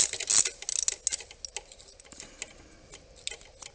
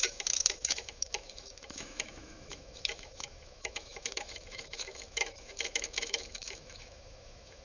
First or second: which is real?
first